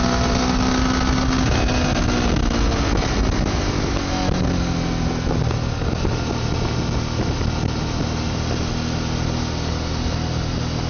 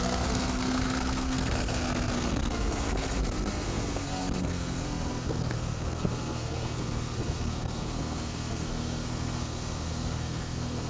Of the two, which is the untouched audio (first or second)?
first